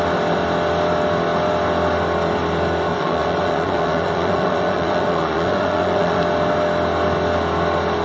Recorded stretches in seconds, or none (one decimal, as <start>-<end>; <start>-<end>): 0.0-2.9; 6.2-8.0